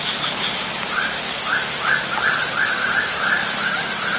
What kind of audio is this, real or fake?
real